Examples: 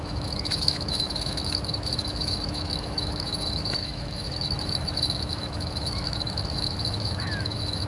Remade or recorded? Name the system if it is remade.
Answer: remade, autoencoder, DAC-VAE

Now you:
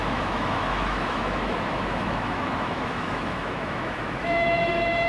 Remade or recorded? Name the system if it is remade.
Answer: remade, autoencoder, DAC-VAE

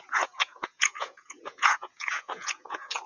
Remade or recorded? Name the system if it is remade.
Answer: remade, vocoder, Vocos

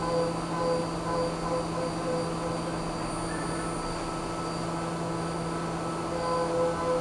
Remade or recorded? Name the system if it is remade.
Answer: recorded